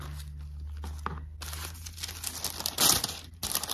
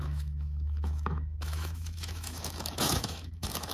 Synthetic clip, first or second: second